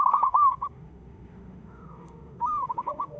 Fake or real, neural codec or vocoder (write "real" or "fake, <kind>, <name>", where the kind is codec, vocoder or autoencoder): fake, autoencoder, DAC-VAE